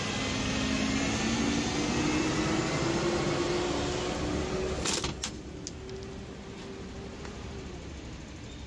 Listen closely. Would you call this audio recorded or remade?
recorded